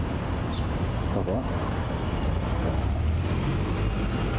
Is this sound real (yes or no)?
yes